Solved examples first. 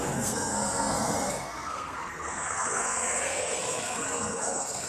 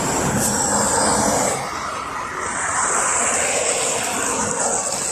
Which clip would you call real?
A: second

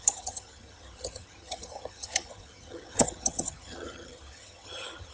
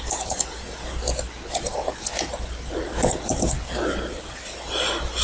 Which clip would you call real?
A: second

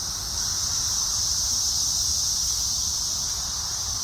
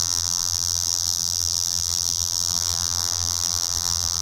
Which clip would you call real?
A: first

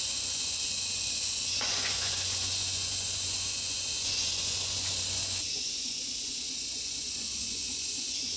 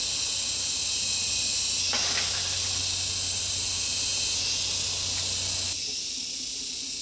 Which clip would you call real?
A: second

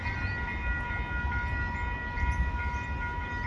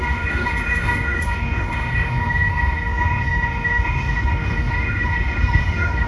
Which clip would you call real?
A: first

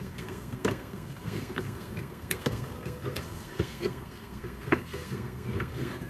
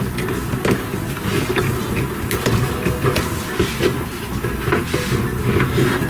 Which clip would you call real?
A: second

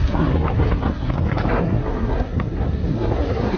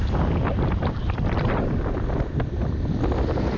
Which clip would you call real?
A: second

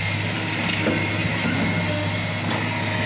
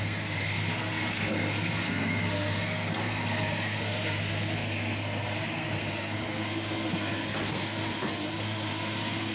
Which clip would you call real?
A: first